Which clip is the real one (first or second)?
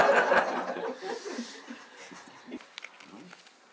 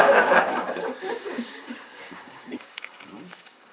first